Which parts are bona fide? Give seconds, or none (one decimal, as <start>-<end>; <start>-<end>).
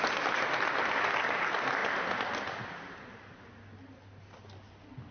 0.0-5.1